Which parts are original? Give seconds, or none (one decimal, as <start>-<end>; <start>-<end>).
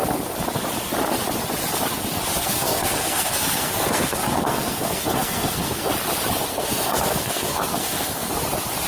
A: 0.0-2.4; 5.9-6.5; 8.3-8.9